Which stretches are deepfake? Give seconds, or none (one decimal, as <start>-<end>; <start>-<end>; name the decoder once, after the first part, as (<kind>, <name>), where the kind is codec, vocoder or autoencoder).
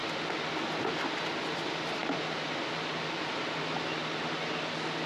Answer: none